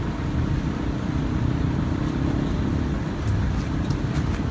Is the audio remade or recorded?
recorded